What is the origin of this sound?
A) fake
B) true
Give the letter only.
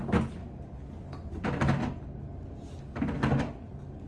B